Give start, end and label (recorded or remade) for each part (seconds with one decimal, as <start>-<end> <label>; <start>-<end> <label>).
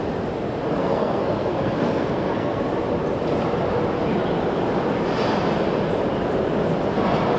0.0-0.8 recorded; 0.8-2.6 remade; 2.6-7.4 recorded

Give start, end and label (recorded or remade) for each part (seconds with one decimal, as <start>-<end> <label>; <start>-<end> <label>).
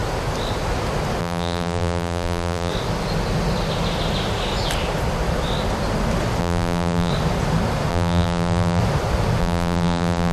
0.0-1.2 recorded; 1.2-2.7 remade; 2.7-6.4 recorded; 6.4-7.1 remade; 7.1-7.9 recorded; 7.9-8.8 remade; 8.8-9.4 recorded; 9.4-10.3 remade